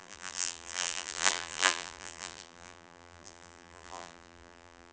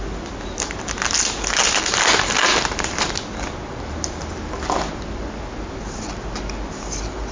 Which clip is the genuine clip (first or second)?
second